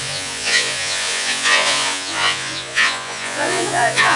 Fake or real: fake